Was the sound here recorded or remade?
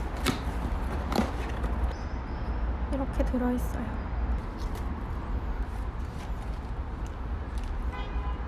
recorded